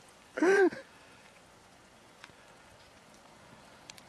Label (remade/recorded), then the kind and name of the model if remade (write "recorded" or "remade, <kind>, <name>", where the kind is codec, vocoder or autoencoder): remade, vocoder, Vocos